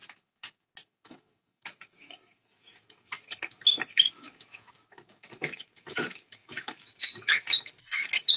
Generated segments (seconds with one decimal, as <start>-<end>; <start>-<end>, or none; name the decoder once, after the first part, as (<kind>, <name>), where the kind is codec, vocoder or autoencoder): 0.0-8.4 (autoencoder, DAC-VAE)